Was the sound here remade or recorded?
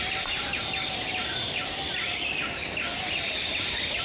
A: remade